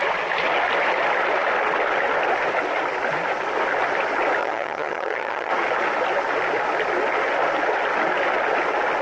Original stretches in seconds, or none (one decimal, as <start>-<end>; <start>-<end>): 0.0-4.4; 5.5-9.0